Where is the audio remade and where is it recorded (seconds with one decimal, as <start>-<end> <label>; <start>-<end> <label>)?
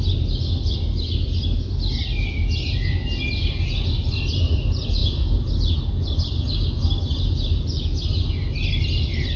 0.0-9.4 recorded